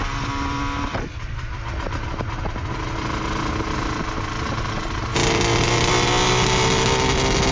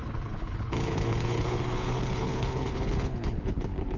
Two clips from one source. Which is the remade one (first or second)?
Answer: second